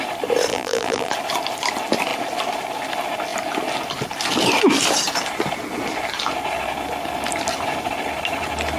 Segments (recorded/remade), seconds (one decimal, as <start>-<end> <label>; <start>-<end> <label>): 0.0-0.5 recorded; 0.5-1.1 remade; 1.1-8.8 recorded